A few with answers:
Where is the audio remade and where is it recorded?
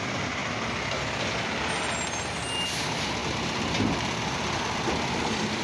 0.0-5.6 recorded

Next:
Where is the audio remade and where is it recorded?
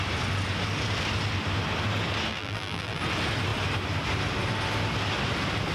0.0-2.3 recorded; 2.3-3.0 remade; 3.0-5.7 recorded